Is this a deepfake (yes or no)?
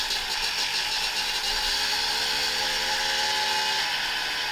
no